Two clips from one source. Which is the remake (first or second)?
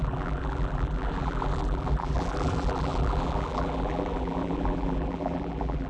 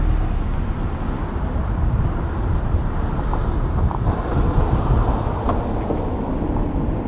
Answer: first